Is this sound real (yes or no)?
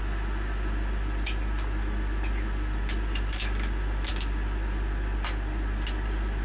yes